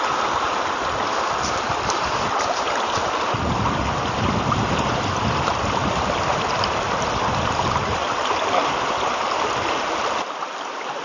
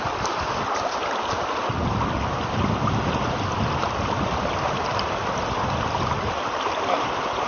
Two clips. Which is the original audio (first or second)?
second